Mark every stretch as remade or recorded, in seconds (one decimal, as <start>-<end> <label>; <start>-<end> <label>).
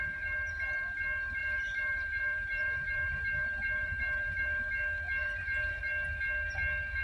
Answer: 0.0-1.4 recorded; 1.4-4.7 remade; 4.7-5.2 recorded; 5.2-5.8 remade; 5.8-7.0 recorded